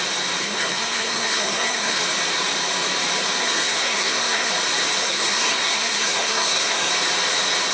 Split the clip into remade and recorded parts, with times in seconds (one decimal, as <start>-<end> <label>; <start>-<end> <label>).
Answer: 0.0-0.4 recorded; 0.4-2.0 remade; 2.0-3.4 recorded; 3.4-4.5 remade; 4.5-5.0 recorded; 5.0-6.9 remade; 6.9-7.7 recorded